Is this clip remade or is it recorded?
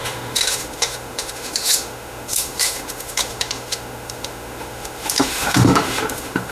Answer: remade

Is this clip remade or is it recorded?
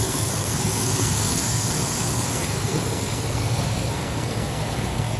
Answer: remade